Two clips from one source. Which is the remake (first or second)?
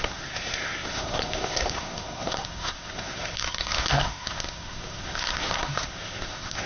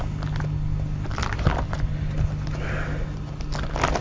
first